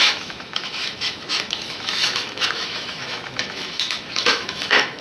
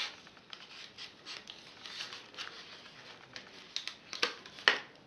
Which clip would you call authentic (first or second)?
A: second